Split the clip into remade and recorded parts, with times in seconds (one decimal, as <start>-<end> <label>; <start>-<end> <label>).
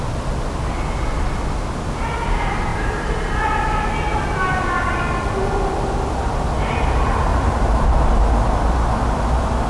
0.0-2.7 recorded; 2.7-3.2 remade; 3.2-7.3 recorded; 7.3-7.9 remade; 7.9-9.7 recorded